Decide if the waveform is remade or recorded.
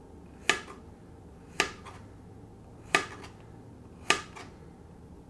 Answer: recorded